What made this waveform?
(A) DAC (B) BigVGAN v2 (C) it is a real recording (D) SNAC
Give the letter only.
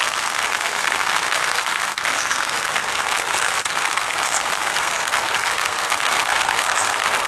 D